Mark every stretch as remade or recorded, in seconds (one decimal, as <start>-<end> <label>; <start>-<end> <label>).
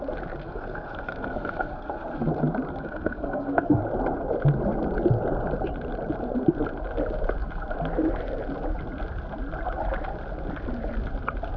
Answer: 0.0-0.4 recorded; 0.4-2.3 remade; 2.3-2.7 recorded; 2.7-3.8 remade; 3.8-11.6 recorded